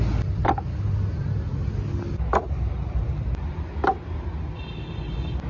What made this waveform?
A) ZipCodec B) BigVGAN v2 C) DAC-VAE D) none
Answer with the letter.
D